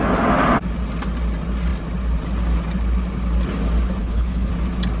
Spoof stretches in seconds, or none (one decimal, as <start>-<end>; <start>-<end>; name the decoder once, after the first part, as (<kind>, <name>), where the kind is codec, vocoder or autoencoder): 4.0-4.5 (codec, HILCodec)